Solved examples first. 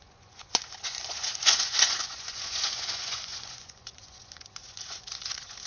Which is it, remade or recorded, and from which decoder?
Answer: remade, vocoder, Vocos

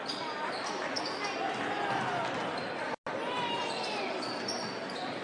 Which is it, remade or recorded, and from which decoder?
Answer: recorded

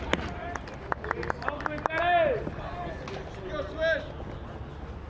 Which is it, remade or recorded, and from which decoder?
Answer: recorded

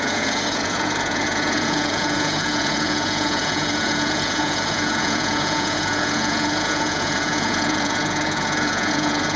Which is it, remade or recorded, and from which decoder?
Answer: remade, vocoder, Vocos